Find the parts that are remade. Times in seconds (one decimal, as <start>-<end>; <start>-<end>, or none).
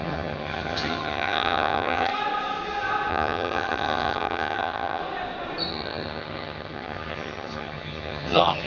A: 0.0-2.1; 3.1-5.0; 5.7-8.7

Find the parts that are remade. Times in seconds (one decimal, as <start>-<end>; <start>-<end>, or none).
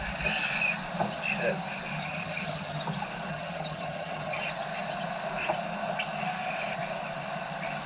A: 2.0-2.8; 3.3-4.4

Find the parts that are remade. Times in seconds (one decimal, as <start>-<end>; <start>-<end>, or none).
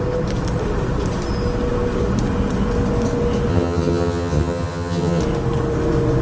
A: 3.5-5.2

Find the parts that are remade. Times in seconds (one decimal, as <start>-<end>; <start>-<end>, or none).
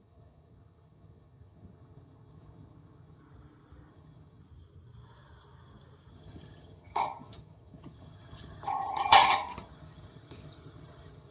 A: 0.0-3.2; 3.9-4.4; 6.1-11.3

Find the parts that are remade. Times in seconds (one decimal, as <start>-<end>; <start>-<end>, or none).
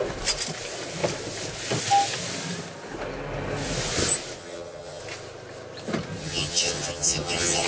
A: 4.4-5.0; 6.2-7.7